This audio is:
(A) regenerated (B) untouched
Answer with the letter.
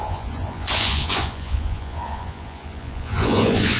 A